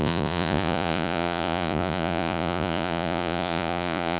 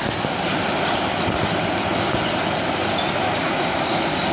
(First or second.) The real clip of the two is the second